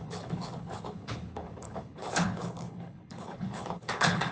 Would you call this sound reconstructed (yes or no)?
yes